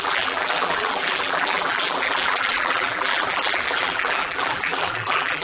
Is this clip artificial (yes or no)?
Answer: yes